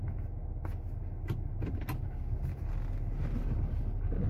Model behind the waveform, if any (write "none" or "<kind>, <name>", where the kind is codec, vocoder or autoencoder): none